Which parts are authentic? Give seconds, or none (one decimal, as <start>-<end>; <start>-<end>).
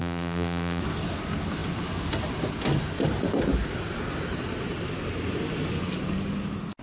0.8-6.8